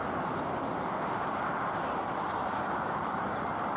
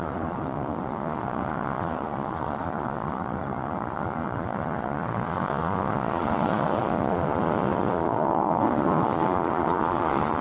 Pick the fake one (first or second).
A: second